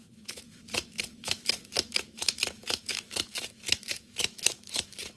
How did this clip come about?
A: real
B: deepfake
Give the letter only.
B